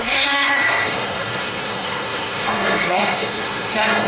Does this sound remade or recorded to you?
remade